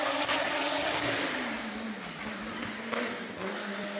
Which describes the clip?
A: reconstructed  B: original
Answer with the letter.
B